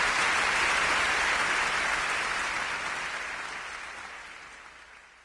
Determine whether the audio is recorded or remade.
recorded